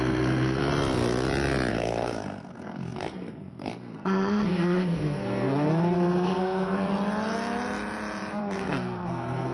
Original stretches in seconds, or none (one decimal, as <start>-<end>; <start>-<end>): 0.6-1.7; 6.9-8.4

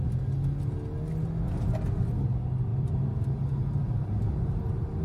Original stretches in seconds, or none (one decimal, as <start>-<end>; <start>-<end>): 0.0-2.7; 3.2-3.6

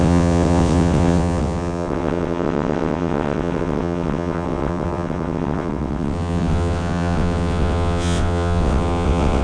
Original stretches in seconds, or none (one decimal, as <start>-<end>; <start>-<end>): none

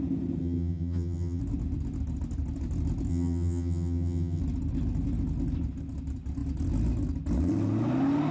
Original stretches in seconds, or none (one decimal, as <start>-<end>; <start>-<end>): 0.0-0.4; 1.4-3.1; 4.4-8.3

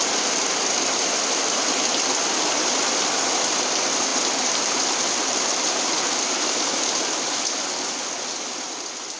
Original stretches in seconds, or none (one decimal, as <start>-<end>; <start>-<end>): 0.0-9.2